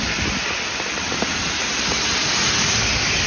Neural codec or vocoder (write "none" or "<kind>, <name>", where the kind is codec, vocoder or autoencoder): none